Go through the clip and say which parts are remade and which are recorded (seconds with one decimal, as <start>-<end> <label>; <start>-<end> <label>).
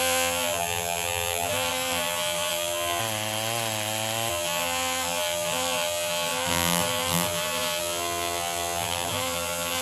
0.0-3.0 remade; 3.0-4.3 recorded; 4.3-9.8 remade